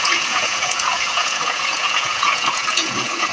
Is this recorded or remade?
remade